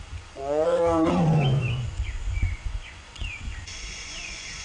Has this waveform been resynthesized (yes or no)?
yes